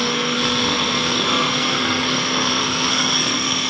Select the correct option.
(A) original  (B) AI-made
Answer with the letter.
B